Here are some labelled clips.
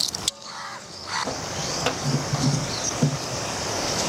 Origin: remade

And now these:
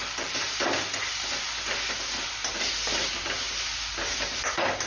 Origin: recorded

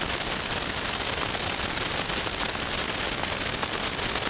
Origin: recorded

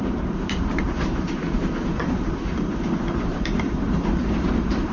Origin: remade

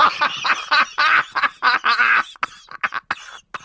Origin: recorded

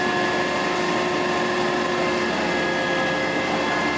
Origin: recorded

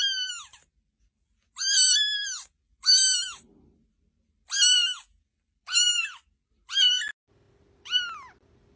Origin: recorded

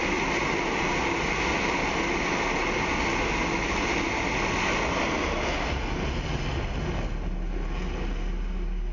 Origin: recorded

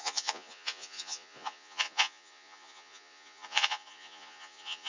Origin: remade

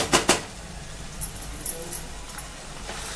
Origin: recorded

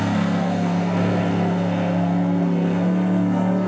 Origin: remade